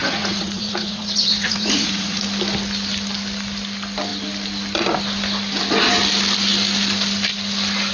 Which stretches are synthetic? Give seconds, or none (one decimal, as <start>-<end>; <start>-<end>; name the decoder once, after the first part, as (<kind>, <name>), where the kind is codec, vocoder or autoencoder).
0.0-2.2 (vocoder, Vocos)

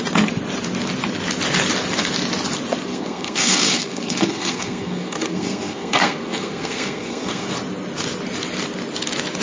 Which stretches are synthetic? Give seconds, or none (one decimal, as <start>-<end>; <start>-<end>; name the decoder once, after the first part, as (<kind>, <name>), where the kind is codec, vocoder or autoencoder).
2.9-7.5 (codec, SNAC)

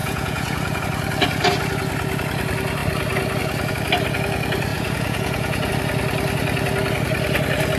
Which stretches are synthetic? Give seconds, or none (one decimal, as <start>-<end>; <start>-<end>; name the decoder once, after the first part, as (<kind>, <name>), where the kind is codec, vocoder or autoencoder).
0.0-0.8 (vocoder, Vocos); 4.7-5.7

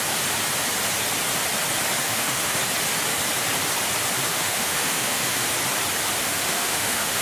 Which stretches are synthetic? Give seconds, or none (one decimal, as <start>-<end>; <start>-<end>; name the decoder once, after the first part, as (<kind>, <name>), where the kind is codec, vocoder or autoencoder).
2.0-2.6 (autoencoder, DAC-VAE); 4.3-5.5; 6.1-7.2

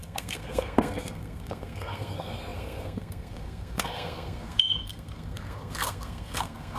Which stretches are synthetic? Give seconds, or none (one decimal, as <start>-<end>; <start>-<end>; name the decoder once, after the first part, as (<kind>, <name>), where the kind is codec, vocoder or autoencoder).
0.0-6.8 (codec, SNAC)